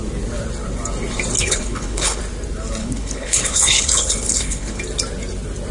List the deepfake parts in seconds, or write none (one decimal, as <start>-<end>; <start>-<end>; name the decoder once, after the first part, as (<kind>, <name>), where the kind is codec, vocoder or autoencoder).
1.4-2.2 (codec, HILCodec); 2.8-4.8